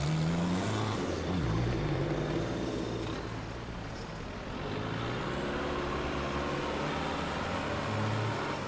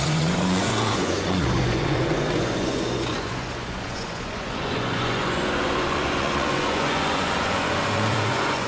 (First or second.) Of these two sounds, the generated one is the second